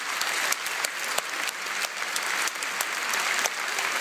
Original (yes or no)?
yes